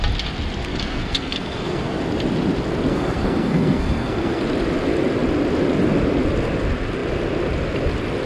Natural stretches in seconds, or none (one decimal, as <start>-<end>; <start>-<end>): 0.0-0.6; 2.0-2.9; 4.4-8.3